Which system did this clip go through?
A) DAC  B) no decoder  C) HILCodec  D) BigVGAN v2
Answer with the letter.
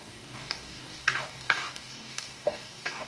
A